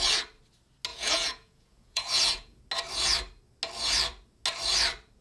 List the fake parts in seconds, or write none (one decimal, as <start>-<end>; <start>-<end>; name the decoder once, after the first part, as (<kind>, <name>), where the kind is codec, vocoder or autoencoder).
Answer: 0.9-2.6 (vocoder, Vocos)